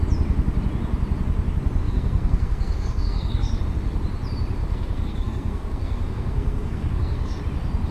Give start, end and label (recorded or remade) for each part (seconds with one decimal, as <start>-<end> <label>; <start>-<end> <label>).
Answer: 0.0-1.8 recorded; 1.8-3.6 remade; 3.6-4.6 recorded; 4.6-7.4 remade; 7.4-7.9 recorded